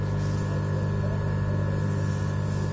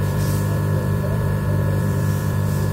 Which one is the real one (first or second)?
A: first